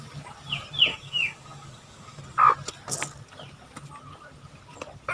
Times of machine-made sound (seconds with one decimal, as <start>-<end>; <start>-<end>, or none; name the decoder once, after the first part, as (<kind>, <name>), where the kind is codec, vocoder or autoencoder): 0.9-2.2 (codec, DAC)